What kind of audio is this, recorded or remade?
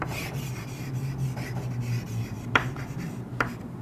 remade